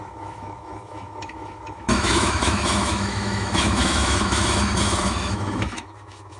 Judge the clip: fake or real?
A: fake